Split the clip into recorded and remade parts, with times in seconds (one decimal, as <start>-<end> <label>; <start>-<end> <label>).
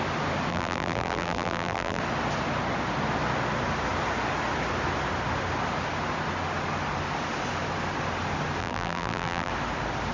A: 0.0-0.5 recorded; 0.5-2.0 remade; 2.0-8.6 recorded; 8.6-9.5 remade; 9.5-10.1 recorded